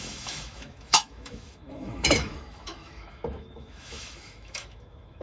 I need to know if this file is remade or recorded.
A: remade